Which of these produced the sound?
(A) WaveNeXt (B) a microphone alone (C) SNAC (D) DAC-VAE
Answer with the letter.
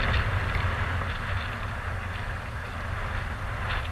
B